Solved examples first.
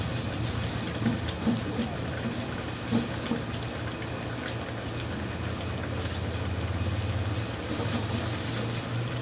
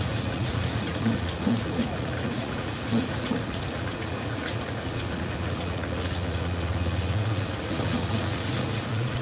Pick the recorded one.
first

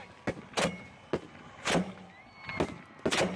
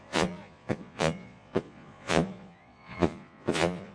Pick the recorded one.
first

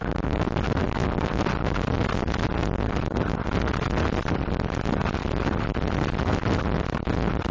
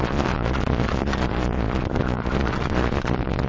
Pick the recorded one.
first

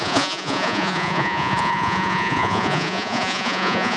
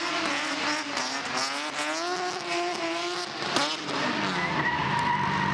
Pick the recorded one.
second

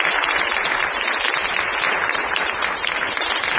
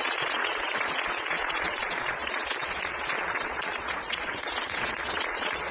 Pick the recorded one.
first